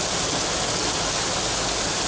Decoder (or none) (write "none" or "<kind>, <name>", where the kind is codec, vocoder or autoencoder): none